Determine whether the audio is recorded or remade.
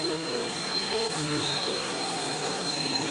remade